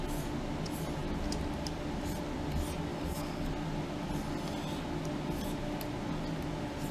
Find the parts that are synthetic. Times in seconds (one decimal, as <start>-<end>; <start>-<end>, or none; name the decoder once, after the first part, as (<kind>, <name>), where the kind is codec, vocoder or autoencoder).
2.9-3.5 (codec, DAC)